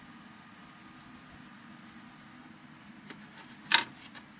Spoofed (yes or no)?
no